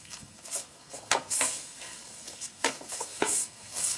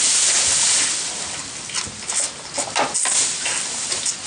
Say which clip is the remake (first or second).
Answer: first